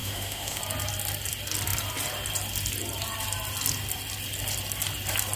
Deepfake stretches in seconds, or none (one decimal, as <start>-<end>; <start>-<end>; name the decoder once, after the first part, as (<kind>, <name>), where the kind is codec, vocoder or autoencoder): 0.0-0.6 (autoencoder, DAC-VAE)